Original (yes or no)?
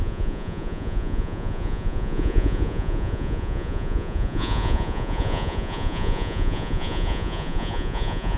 no